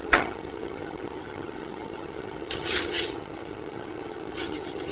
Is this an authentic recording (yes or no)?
no